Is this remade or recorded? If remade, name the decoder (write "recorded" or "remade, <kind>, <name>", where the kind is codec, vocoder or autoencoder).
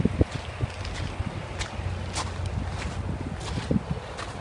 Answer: recorded